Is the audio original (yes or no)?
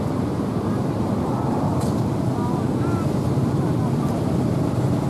yes